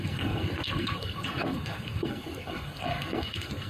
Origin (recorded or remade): remade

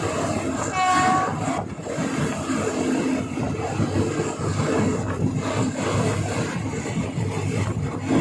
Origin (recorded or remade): recorded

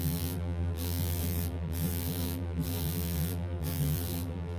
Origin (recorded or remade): remade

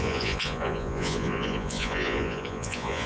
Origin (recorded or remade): remade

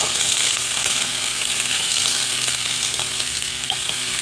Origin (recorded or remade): remade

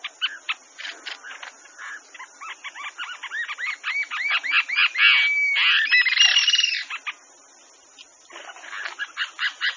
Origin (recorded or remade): recorded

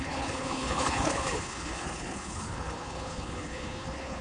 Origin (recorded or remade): remade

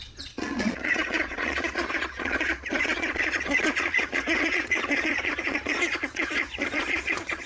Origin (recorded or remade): remade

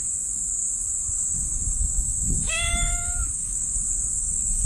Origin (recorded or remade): remade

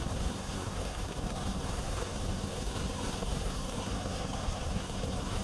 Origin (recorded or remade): remade